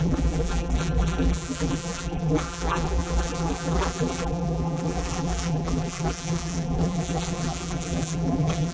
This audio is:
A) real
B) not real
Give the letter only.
B